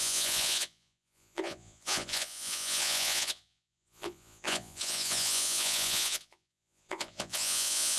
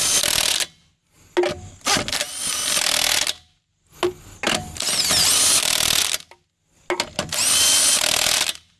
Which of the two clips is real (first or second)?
second